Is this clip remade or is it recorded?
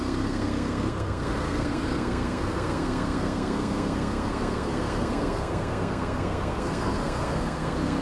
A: remade